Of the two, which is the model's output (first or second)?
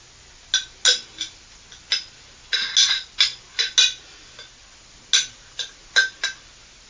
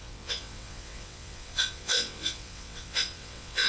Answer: second